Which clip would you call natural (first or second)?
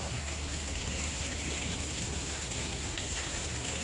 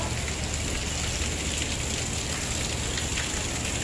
second